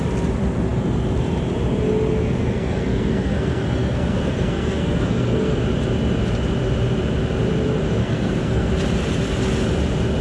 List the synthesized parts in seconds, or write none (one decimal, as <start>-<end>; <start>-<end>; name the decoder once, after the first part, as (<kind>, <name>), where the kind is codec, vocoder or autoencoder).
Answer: 2.4-5.6 (codec, SNAC); 8.0-8.7